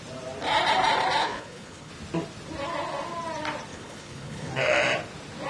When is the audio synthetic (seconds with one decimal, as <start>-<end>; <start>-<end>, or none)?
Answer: 1.2-1.9; 3.7-4.5